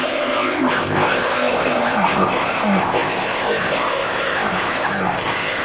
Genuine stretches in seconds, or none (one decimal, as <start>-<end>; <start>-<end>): none